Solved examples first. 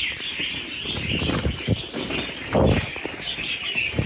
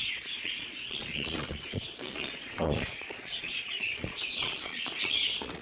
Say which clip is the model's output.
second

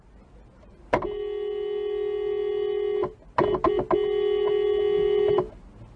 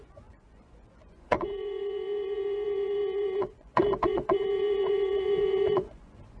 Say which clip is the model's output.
second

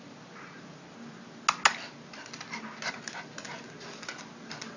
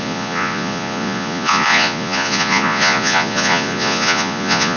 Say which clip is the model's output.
second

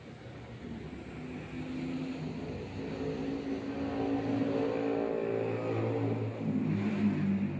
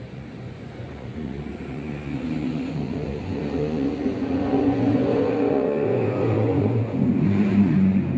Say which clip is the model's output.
second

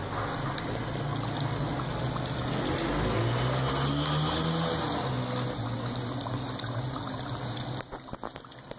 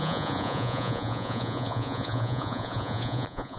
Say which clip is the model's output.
second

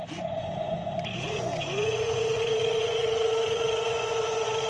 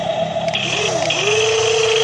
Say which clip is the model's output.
first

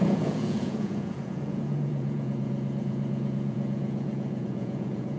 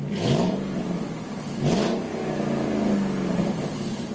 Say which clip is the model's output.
first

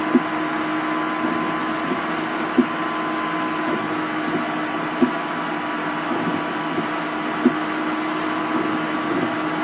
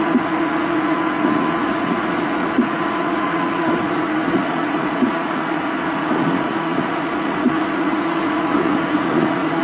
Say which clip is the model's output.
second